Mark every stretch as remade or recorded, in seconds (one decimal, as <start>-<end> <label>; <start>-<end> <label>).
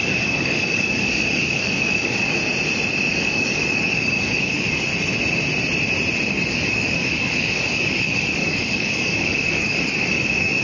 0.0-2.4 remade; 2.4-3.1 recorded; 3.1-4.9 remade; 4.9-6.5 recorded; 6.5-10.6 remade